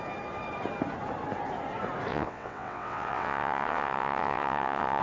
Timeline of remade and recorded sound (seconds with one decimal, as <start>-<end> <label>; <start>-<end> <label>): 0.0-2.1 recorded; 2.1-5.0 remade